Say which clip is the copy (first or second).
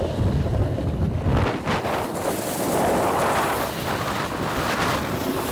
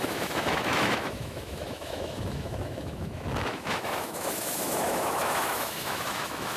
second